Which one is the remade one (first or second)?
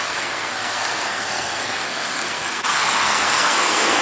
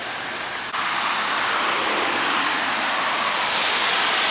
first